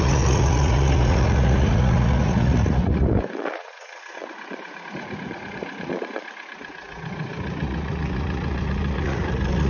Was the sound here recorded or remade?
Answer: remade